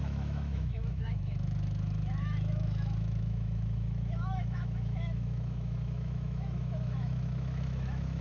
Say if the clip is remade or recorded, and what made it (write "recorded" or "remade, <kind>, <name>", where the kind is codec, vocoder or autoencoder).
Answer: remade, autoencoder, DAC-VAE